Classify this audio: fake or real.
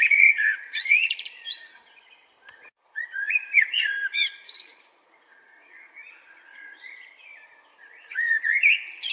fake